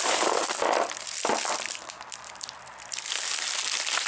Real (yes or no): yes